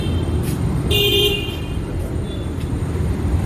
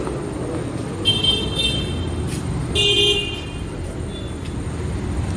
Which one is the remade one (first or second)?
first